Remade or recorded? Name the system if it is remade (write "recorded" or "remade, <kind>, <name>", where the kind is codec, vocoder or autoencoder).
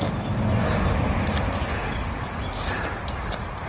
recorded